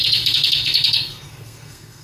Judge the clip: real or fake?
fake